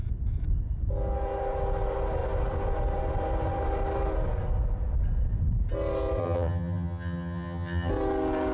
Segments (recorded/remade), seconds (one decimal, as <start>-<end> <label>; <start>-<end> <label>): 0.0-6.2 recorded; 6.2-7.9 remade; 7.9-8.5 recorded